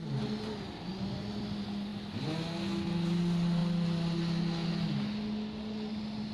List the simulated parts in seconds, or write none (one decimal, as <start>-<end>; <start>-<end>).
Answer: none

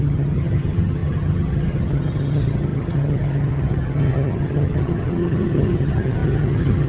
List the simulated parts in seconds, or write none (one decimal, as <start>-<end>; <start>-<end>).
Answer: 0.0-6.9

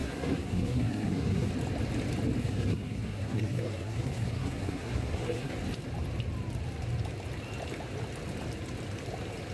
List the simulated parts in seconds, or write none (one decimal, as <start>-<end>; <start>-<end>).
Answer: 0.0-1.5; 2.4-5.5

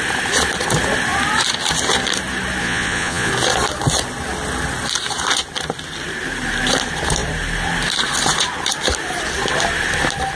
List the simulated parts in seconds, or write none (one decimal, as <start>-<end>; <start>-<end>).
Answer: 2.6-3.3

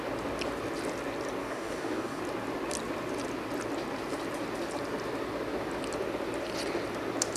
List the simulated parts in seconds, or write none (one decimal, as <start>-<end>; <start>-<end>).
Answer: 1.4-2.2

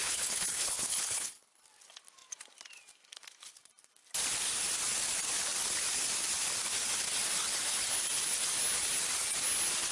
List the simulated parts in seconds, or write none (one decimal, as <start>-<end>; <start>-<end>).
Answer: 0.0-1.6